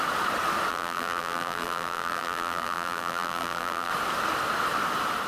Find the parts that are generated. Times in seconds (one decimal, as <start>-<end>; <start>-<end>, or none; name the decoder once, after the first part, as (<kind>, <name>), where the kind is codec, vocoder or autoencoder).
0.7-3.9 (vocoder, BigVGAN v2)